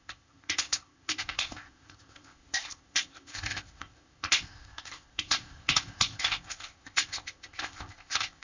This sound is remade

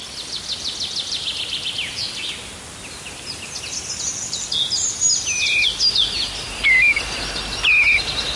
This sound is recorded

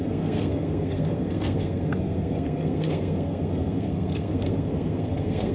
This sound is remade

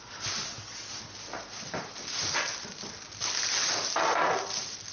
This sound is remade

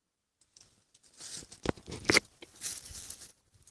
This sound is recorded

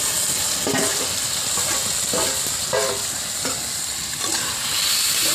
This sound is recorded